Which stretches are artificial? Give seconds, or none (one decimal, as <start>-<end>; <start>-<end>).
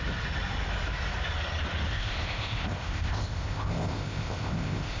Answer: 1.9-5.0